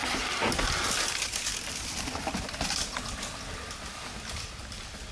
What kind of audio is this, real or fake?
real